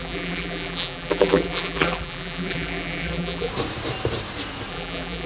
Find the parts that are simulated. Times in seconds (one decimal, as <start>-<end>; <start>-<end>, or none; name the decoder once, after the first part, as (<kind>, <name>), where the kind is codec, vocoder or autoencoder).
0.0-3.5 (vocoder, BigVGAN v2); 4.7-5.3